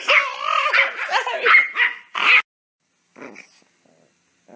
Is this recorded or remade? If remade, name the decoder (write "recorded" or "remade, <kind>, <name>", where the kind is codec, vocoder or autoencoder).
recorded